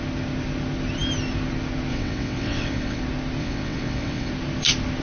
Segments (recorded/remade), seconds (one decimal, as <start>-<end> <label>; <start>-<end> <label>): 0.0-1.9 recorded; 1.9-3.0 remade; 3.0-3.4 recorded; 3.4-4.3 remade; 4.3-5.0 recorded